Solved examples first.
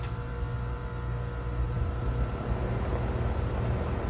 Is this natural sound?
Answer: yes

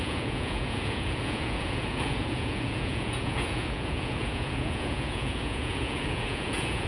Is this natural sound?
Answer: no